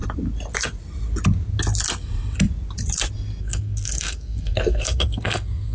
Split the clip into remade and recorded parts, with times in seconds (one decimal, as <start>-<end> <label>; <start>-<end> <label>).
0.0-3.4 recorded; 3.4-5.7 remade